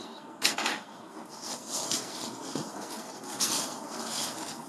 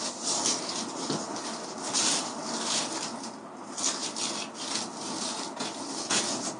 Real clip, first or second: second